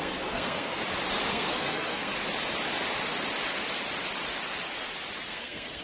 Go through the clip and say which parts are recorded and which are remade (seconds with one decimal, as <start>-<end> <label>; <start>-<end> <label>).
0.0-0.8 remade; 0.8-1.3 recorded; 1.3-2.1 remade; 2.1-5.3 recorded; 5.3-5.8 remade